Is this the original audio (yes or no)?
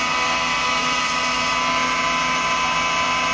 yes